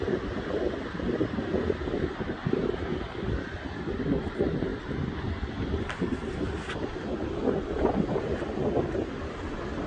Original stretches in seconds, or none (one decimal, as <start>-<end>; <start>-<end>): 0.0-9.9